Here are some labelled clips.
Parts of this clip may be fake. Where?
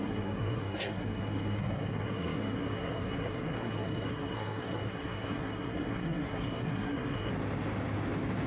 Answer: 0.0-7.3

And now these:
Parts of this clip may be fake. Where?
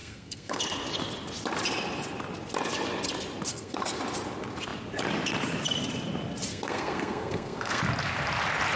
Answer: 0.0-0.6; 3.5-4.0; 6.5-7.8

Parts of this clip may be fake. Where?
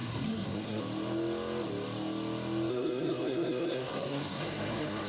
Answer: 0.0-0.8; 2.7-5.1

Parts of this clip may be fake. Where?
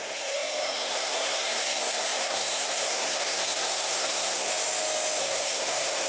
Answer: 0.0-4.5; 5.2-6.1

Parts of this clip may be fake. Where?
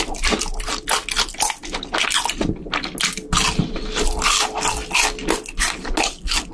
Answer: none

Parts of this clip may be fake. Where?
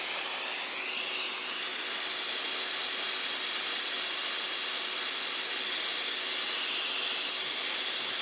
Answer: none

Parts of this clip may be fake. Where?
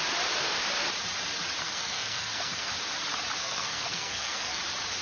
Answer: 1.6-2.7; 3.4-4.6